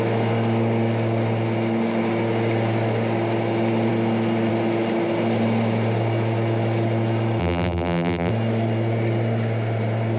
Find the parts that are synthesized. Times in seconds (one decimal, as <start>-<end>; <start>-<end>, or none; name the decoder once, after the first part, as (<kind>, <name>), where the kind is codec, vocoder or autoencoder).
7.4-8.3 (vocoder, BigVGAN v2)